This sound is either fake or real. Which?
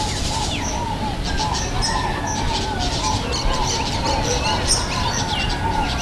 real